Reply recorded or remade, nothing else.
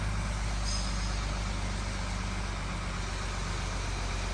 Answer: recorded